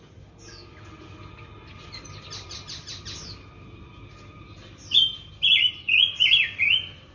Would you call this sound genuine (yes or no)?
yes